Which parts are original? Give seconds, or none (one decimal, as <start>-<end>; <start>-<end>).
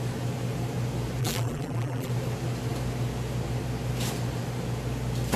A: 0.0-1.2; 2.1-5.4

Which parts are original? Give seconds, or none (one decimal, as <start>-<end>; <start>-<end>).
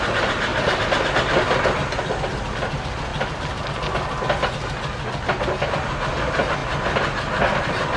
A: 0.0-0.5; 1.4-3.1; 3.7-8.0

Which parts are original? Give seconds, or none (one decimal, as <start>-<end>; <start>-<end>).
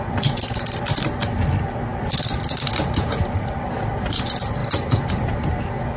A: 0.0-1.9; 4.1-6.0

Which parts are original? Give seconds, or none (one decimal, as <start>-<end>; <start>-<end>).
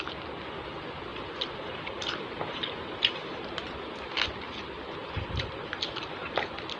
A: 0.0-1.1; 3.6-5.0; 6.1-6.8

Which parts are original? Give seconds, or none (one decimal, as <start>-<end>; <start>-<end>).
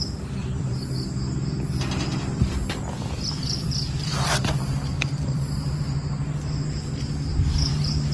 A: 0.0-0.4; 0.9-2.1; 5.4-7.3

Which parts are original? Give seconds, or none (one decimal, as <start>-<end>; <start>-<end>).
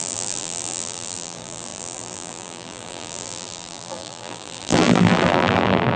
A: none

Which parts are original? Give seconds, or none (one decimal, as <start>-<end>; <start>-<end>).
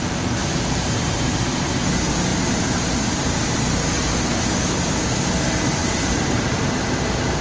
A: 0.0-0.4; 1.7-2.3; 4.9-5.8; 6.8-7.4